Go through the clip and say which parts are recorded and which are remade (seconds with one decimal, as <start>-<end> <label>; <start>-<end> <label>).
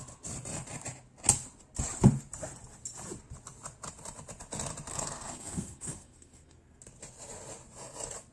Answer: 0.0-4.9 recorded; 4.9-6.8 remade; 6.8-8.3 recorded